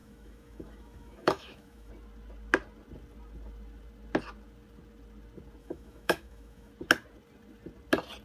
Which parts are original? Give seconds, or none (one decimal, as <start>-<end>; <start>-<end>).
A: 1.9-5.6; 6.7-8.2